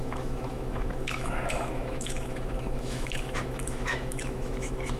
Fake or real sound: fake